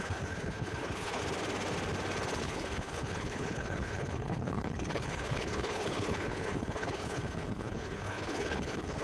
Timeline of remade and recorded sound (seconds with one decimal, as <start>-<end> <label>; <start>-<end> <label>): 0.0-1.2 remade; 1.2-2.4 recorded; 2.4-9.0 remade